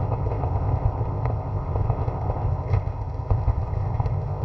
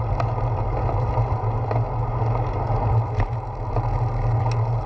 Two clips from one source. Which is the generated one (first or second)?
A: first